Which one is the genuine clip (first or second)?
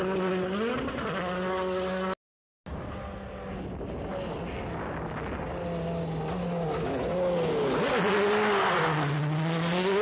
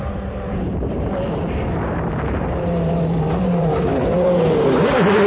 first